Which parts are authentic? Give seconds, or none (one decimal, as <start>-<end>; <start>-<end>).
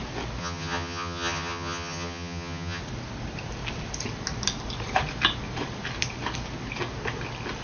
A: 0.0-0.4; 2.8-7.6